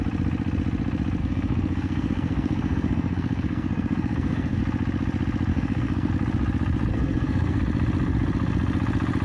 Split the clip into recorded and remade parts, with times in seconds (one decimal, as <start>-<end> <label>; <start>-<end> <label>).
0.0-1.2 recorded; 1.2-4.6 remade; 4.6-5.5 recorded; 5.5-6.1 remade; 6.1-6.9 recorded; 6.9-7.6 remade; 7.6-9.2 recorded